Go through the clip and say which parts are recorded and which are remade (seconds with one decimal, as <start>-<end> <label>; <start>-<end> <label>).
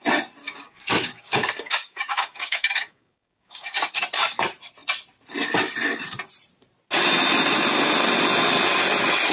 0.0-0.4 recorded; 0.4-4.0 remade; 4.0-9.3 recorded